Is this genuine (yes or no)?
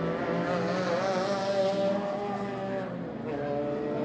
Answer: yes